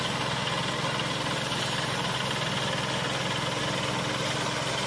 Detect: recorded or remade recorded